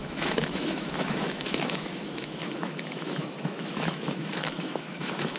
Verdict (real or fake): fake